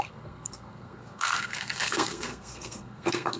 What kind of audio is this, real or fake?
fake